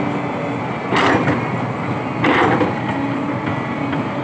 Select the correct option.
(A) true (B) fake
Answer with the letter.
A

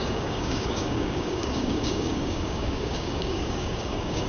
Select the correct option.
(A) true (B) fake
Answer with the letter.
B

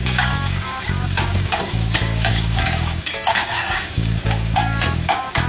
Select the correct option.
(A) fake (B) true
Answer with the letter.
A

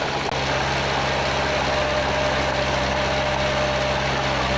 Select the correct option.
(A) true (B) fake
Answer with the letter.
A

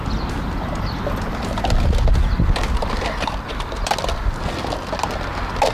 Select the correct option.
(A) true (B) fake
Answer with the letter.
A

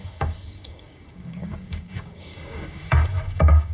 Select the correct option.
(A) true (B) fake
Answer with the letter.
B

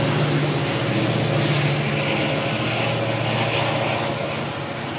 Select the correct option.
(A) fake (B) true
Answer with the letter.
B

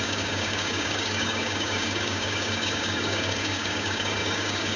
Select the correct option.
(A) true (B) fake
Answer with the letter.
B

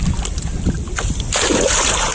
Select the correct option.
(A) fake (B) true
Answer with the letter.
B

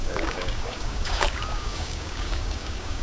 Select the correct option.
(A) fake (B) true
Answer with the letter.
A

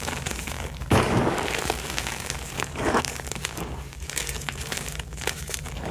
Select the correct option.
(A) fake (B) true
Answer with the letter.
A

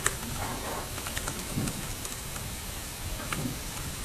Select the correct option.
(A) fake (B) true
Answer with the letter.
A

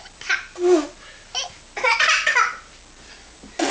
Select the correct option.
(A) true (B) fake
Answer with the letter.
A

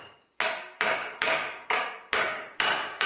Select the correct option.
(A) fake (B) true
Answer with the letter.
A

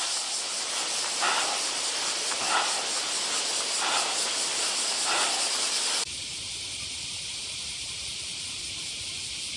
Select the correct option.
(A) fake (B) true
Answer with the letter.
B